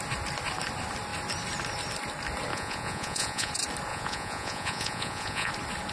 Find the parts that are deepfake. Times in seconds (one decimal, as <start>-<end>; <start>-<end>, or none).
2.5-3.5; 3.9-5.5